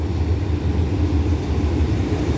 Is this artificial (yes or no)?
no